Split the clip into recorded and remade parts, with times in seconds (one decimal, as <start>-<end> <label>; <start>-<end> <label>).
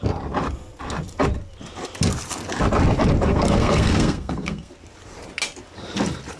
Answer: 0.0-3.3 recorded; 3.3-4.7 remade; 4.7-6.4 recorded